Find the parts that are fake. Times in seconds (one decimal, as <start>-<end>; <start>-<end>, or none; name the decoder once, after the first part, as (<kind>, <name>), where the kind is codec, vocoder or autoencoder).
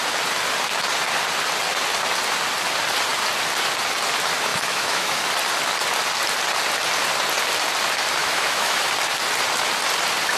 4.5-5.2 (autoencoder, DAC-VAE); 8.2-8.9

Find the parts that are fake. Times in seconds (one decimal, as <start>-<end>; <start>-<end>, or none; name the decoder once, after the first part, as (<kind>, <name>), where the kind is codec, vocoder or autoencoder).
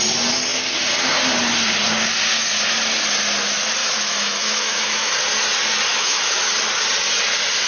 3.8-5.1 (autoencoder, DAC-VAE); 5.9-6.5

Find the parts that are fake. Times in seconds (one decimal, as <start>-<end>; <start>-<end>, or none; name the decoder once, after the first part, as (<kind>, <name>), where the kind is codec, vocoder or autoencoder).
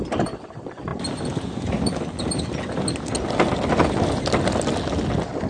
none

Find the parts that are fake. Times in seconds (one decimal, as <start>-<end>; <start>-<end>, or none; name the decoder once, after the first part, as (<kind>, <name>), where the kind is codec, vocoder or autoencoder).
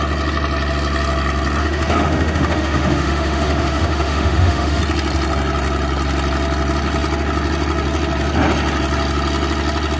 1.6-4.8 (autoencoder, DAC-VAE)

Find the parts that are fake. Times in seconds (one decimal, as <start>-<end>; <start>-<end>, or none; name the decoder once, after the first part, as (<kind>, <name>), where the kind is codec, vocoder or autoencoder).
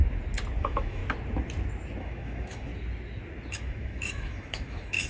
0.6-1.0 (autoencoder, DAC-VAE); 2.0-2.7; 3.5-5.1